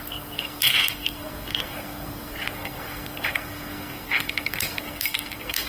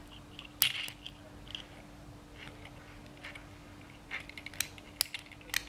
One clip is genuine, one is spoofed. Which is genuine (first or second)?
second